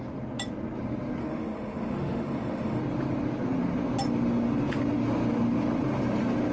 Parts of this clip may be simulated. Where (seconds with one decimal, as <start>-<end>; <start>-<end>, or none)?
1.2-2.8